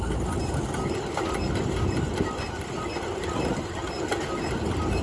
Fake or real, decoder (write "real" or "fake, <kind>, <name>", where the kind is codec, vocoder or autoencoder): real